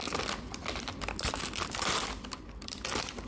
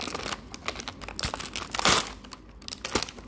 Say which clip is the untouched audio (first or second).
second